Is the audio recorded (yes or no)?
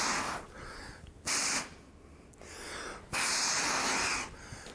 yes